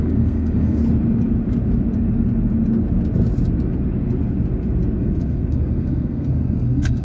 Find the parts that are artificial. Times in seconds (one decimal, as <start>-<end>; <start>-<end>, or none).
0.0-0.8; 5.0-7.0